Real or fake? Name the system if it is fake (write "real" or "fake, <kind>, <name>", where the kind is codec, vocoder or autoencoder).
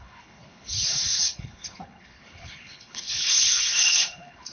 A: fake, codec, HILCodec